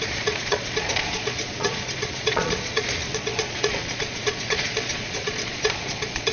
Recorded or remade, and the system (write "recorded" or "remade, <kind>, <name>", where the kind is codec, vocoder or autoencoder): remade, vocoder, Vocos